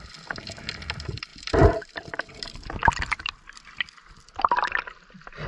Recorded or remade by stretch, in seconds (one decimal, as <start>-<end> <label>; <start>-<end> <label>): 0.0-1.3 recorded; 1.3-2.3 remade; 2.3-5.5 recorded